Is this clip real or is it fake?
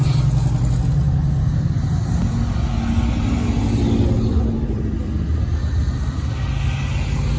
real